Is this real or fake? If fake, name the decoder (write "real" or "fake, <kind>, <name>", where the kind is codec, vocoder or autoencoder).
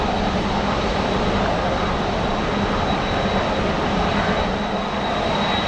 real